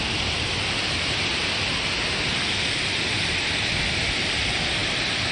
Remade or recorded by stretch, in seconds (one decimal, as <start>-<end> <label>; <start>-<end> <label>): 0.0-5.3 recorded